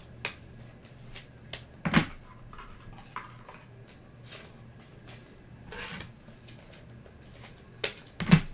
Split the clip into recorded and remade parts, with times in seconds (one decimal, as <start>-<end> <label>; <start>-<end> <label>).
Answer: 0.0-8.5 recorded